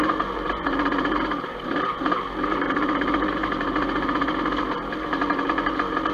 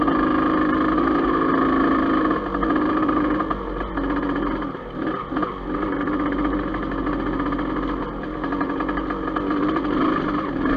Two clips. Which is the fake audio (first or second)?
first